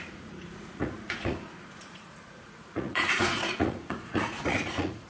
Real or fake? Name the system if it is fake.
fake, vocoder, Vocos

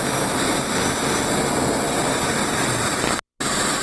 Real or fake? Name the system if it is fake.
real